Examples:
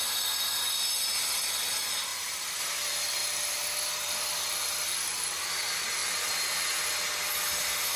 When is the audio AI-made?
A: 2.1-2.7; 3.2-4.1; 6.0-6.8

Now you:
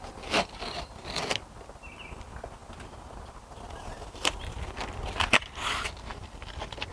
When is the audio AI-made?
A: 6.1-6.9

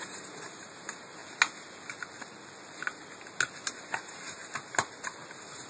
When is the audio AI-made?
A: 0.0-1.2; 3.7-4.4

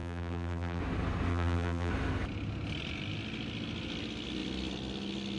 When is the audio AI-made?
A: 0.0-0.8; 1.3-1.9

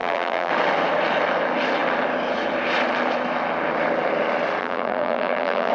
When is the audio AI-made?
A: 0.0-0.5; 4.6-5.7

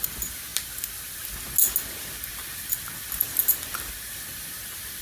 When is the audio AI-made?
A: none

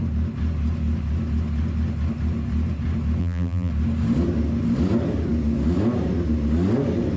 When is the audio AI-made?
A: 3.2-3.7

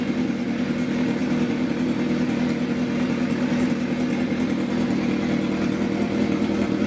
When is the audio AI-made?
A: 1.2-1.7